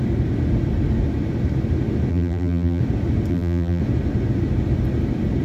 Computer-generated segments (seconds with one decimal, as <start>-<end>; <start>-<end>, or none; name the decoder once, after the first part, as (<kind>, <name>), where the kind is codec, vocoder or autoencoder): 2.1-2.8 (vocoder, BigVGAN v2); 3.3-3.8